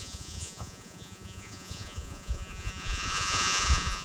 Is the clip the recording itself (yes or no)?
no